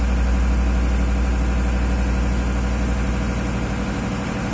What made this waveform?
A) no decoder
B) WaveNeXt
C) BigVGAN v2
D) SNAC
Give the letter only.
A